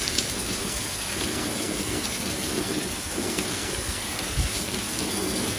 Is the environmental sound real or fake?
fake